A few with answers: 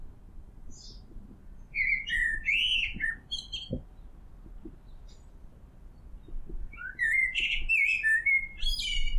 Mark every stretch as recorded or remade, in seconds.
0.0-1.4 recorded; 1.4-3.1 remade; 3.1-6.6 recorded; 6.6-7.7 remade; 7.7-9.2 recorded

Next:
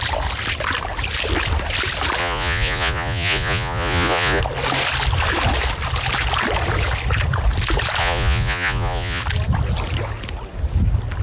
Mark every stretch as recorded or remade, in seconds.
0.0-2.2 recorded; 2.2-4.4 remade; 4.4-8.0 recorded; 8.0-9.2 remade; 9.2-11.2 recorded

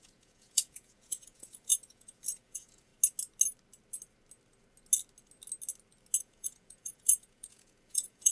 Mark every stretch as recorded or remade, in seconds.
0.0-2.9 remade; 2.9-6.2 recorded; 6.2-8.3 remade

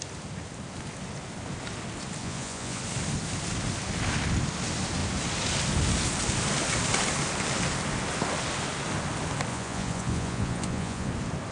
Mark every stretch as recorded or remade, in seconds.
0.0-2.2 recorded; 2.2-2.8 remade; 2.8-9.5 recorded; 9.5-11.1 remade; 11.1-11.5 recorded

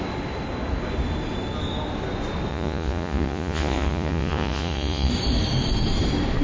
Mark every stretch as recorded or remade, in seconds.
0.0-2.5 recorded; 2.5-5.1 remade; 5.1-6.4 recorded

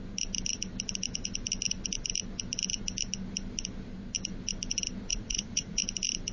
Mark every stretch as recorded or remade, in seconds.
0.0-5.1 recorded; 5.1-5.8 remade; 5.8-6.3 recorded